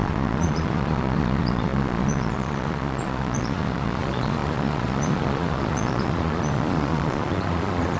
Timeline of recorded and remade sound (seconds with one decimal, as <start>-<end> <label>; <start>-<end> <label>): 0.0-8.0 remade